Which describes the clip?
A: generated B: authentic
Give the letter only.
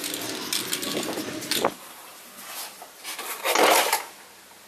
B